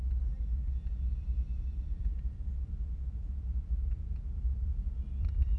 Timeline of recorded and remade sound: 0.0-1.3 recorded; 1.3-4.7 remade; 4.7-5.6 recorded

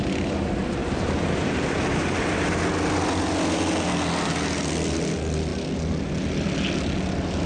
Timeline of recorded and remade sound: 0.0-0.8 recorded; 0.8-2.4 remade; 2.4-7.5 recorded

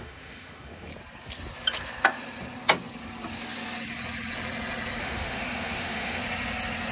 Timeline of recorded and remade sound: 0.0-0.9 remade; 0.9-5.0 recorded; 5.0-6.2 remade; 6.2-6.9 recorded